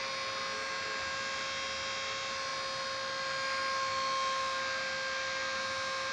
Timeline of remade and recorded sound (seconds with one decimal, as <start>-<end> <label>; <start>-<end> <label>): 0.0-6.1 recorded